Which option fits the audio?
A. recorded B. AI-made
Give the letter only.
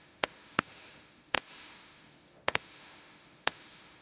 B